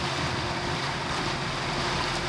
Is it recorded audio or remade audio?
recorded